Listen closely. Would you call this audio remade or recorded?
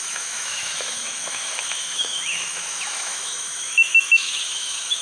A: remade